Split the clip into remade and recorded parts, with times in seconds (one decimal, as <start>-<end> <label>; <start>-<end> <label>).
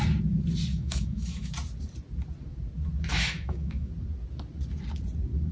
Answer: 0.0-0.7 recorded; 0.7-1.5 remade; 1.5-3.1 recorded; 3.1-3.9 remade; 3.9-5.5 recorded